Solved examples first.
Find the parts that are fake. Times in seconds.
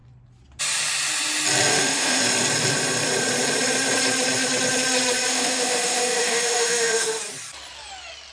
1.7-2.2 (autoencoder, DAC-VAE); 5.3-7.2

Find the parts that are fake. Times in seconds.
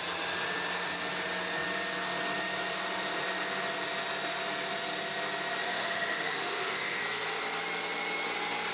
5.6-7.0 (autoencoder, DAC-VAE)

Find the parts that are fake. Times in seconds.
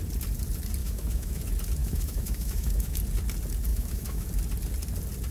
0.8-1.4 (autoencoder, DAC-VAE); 1.8-3.0; 3.7-4.3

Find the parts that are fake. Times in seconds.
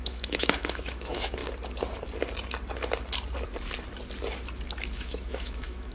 0.0-1.4 (autoencoder, DAC-VAE); 4.9-5.9